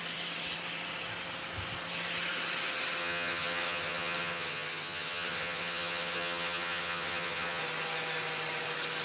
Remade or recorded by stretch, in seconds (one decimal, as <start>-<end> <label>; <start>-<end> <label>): 0.0-3.0 recorded; 3.0-7.6 remade; 7.6-9.0 recorded